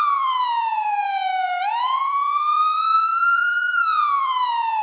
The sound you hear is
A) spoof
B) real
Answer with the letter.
A